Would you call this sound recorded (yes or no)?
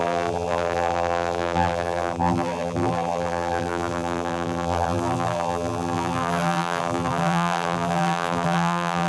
no